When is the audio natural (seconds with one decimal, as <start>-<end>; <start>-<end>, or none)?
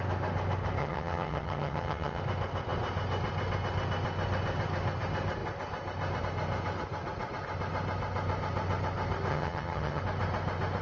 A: 0.0-0.8; 2.2-9.3; 10.0-10.8